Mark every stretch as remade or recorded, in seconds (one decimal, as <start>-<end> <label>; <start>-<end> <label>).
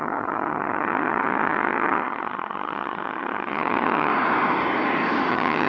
0.0-4.1 remade; 4.1-5.3 recorded; 5.3-5.7 remade